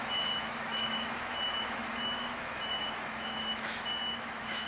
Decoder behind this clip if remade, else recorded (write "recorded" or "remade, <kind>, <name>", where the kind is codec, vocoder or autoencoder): remade, autoencoder, DAC-VAE